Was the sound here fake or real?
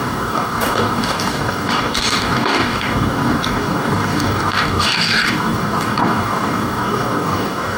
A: fake